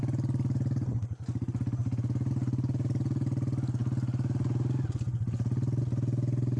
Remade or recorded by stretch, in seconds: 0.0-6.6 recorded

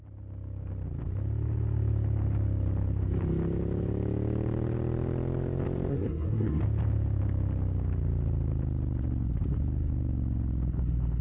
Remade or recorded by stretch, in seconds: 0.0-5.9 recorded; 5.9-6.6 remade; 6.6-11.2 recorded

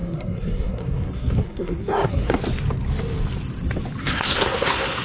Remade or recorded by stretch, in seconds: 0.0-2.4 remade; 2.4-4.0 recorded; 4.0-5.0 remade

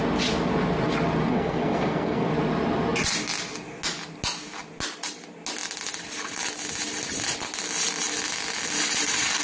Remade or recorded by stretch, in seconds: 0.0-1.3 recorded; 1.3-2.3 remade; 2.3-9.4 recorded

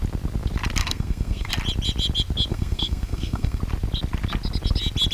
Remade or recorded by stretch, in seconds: 0.0-0.8 recorded; 0.8-1.5 remade; 1.5-2.5 recorded; 2.5-3.6 remade; 3.6-5.1 recorded

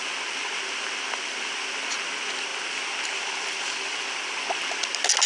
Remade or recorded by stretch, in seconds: 0.0-5.3 recorded

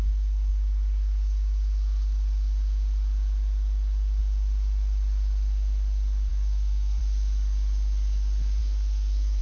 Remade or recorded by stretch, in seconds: 0.0-6.3 recorded; 6.3-7.0 remade; 7.0-8.6 recorded; 8.6-9.4 remade

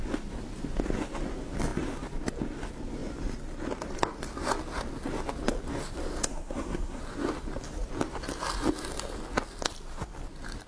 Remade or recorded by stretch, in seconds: 0.0-6.3 recorded; 6.3-7.0 remade; 7.0-10.7 recorded